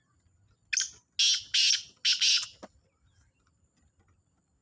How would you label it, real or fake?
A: real